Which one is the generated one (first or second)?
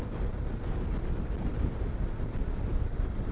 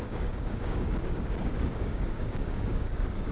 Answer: second